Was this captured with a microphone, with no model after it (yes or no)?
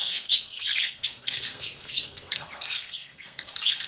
no